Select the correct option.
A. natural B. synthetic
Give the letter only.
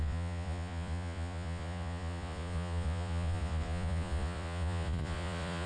B